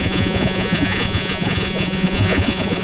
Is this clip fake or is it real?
fake